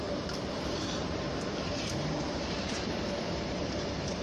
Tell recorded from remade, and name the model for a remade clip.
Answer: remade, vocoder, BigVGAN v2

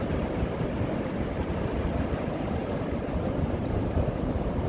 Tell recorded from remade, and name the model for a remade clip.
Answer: remade, vocoder, BigVGAN v2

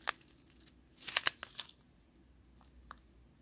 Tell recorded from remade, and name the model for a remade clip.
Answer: recorded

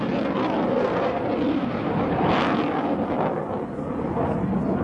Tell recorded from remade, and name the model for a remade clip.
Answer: remade, vocoder, BigVGAN v2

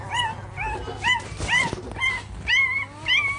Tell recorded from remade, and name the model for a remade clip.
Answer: recorded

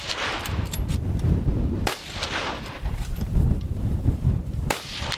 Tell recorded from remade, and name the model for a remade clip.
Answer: remade, vocoder, BigVGAN v2